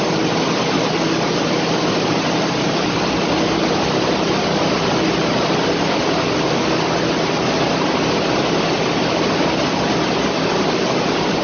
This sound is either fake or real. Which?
real